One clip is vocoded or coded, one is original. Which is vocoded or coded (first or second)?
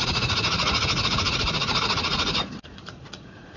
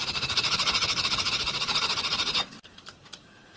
first